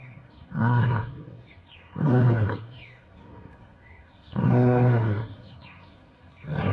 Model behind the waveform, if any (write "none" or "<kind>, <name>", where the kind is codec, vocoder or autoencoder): codec, SNAC